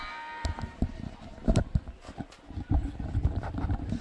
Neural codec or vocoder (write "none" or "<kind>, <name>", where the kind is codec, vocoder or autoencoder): vocoder, BigVGAN v2